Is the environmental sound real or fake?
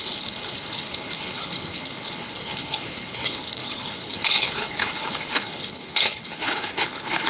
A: fake